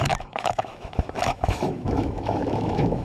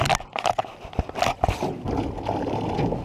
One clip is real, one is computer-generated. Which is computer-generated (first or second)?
first